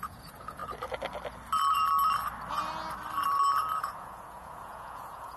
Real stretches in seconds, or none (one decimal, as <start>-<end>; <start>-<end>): 0.6-3.8